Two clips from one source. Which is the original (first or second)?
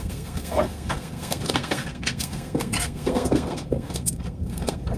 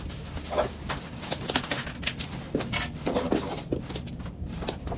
second